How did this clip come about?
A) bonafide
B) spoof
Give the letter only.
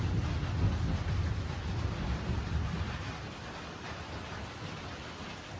A